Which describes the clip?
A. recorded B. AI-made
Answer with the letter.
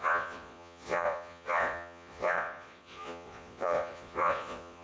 B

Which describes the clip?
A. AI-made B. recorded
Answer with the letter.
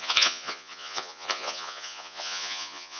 A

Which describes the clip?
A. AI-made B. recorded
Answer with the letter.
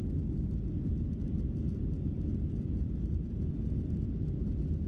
B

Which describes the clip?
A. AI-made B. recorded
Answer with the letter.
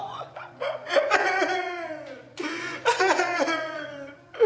A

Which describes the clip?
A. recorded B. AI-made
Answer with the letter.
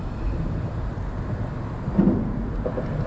A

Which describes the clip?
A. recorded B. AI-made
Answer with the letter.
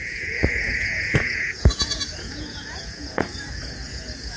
B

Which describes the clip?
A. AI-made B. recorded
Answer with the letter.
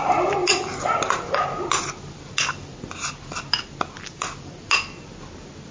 B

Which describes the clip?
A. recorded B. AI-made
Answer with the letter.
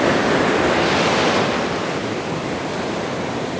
A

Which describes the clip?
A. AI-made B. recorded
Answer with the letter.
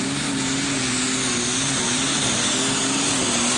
B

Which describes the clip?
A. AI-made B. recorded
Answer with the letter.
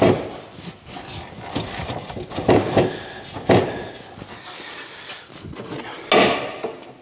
B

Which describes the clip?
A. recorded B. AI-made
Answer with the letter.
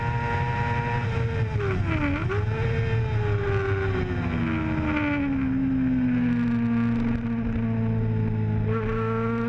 A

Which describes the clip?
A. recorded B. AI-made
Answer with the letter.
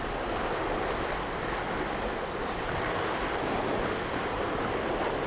A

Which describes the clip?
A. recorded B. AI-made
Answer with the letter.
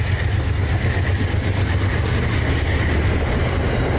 A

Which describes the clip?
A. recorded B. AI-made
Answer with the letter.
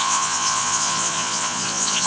B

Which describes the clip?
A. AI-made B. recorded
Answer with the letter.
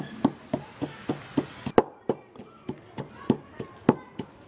B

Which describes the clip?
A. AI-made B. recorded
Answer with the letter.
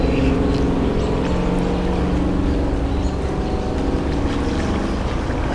B